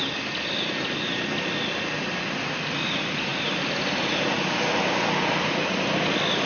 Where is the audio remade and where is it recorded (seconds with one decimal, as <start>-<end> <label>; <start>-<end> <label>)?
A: 0.0-6.5 recorded